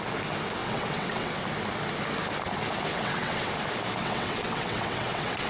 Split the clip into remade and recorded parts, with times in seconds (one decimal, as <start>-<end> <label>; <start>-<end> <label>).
0.0-0.6 recorded; 0.6-1.4 remade; 1.4-2.9 recorded; 2.9-3.5 remade; 3.5-4.0 recorded; 4.0-5.5 remade